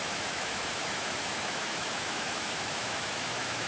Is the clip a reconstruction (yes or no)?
yes